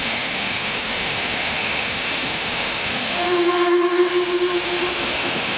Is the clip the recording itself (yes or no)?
no